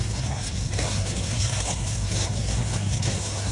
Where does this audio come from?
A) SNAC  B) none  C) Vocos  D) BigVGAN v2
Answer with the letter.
A